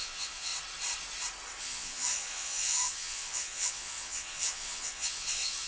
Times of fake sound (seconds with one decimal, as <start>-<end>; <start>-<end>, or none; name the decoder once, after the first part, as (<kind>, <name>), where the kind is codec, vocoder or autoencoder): 0.0-0.5 (vocoder, Vocos); 1.6-5.7